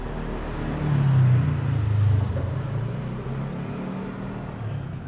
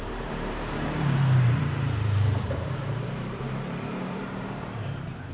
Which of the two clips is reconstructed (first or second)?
second